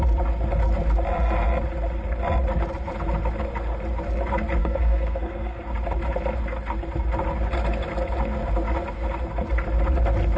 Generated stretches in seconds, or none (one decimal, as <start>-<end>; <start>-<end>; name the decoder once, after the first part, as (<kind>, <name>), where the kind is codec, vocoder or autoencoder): 4.6-5.6 (codec, SNAC)